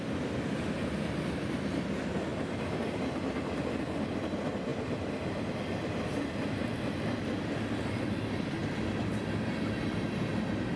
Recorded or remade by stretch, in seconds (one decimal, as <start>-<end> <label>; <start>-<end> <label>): 0.0-10.8 recorded